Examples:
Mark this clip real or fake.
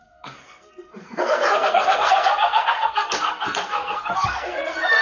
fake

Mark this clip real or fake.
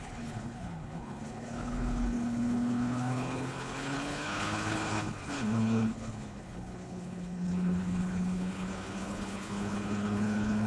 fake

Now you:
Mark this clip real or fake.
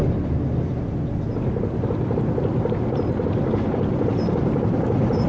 real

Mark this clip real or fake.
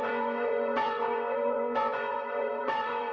fake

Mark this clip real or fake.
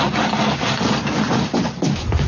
real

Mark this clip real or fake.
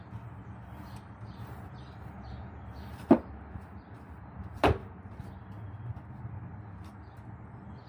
real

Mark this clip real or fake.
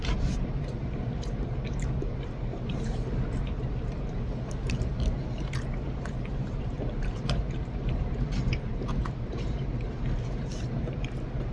fake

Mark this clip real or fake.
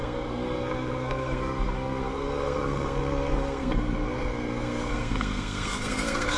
fake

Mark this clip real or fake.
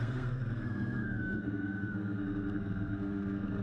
fake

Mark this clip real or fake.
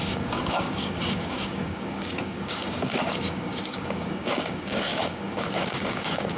fake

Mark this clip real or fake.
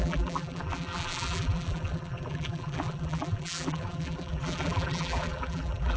fake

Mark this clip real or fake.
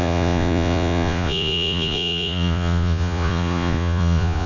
fake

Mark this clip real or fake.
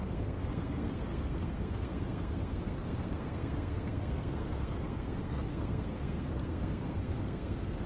fake